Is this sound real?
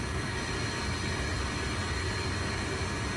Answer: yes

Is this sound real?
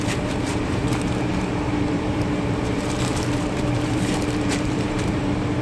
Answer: no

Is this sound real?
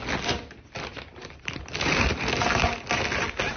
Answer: yes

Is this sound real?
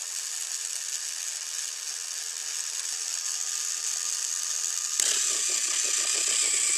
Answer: yes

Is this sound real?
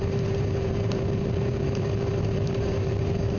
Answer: no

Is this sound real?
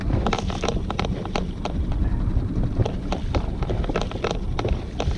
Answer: yes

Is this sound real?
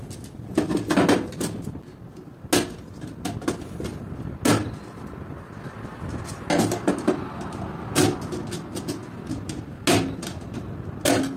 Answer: yes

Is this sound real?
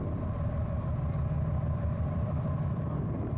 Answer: no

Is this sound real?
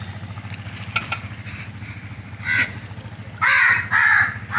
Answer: yes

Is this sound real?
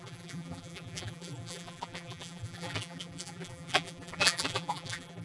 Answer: no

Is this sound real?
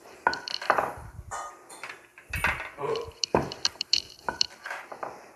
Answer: no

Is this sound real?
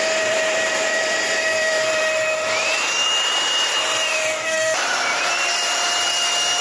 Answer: no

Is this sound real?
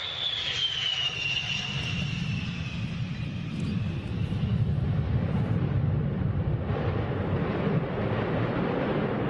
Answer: no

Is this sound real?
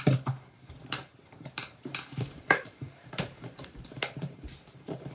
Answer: no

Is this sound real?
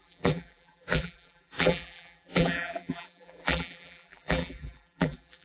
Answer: no